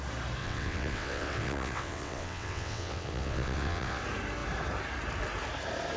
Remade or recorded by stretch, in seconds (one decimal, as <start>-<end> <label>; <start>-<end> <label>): 0.0-0.4 recorded; 0.4-4.0 remade; 4.0-6.0 recorded